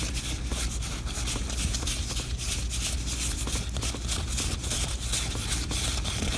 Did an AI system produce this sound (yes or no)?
no